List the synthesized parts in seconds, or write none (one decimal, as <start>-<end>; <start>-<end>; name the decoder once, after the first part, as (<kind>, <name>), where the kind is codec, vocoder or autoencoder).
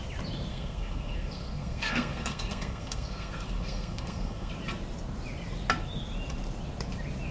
0.5-4.5 (codec, SNAC)